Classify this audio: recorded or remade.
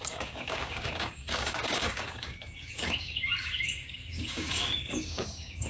remade